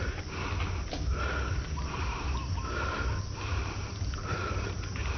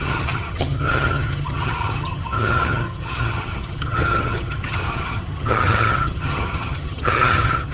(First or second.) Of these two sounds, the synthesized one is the second